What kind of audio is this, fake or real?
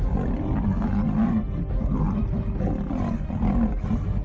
real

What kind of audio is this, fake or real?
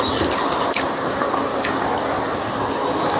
real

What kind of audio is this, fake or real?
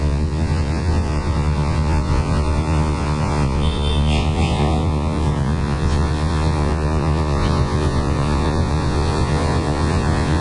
fake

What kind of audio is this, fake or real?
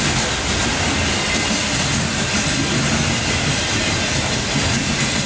real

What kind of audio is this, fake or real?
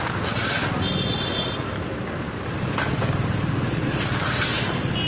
real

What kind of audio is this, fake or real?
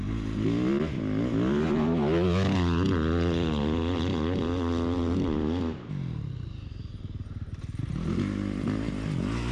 real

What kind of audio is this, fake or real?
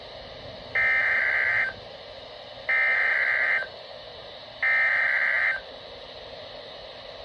real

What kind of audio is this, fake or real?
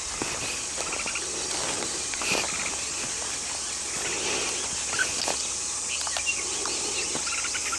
real